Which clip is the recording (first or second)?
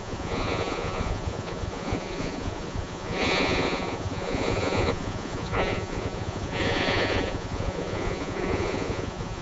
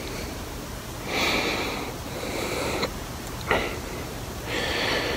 second